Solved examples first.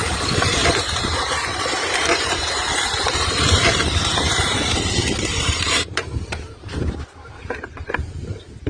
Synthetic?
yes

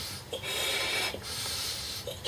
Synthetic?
yes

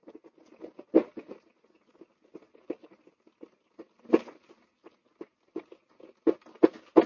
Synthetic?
no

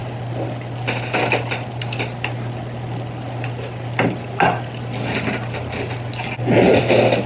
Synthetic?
no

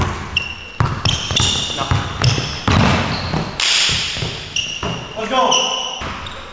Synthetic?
no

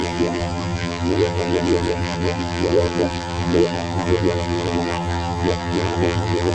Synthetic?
yes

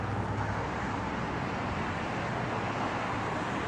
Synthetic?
no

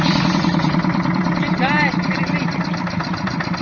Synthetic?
yes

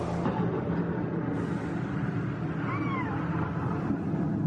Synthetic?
no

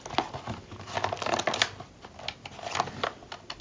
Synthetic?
no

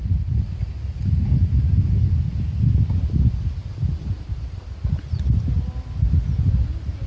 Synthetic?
no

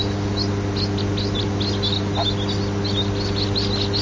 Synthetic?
no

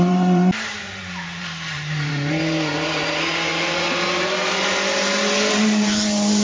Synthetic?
yes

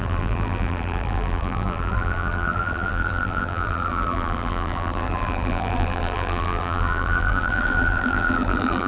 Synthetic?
yes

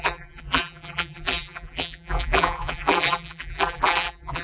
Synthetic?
yes